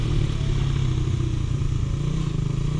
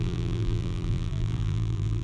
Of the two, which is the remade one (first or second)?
second